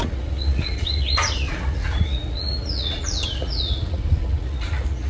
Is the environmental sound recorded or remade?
remade